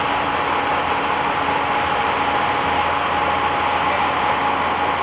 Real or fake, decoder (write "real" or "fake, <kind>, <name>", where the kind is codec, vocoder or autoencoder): real